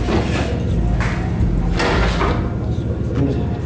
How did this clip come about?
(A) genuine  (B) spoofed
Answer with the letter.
A